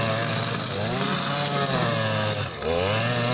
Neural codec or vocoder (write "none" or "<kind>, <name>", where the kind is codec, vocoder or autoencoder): none